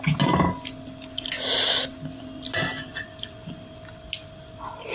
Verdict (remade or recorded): recorded